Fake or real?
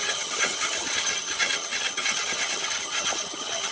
fake